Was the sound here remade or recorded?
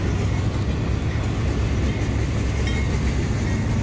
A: recorded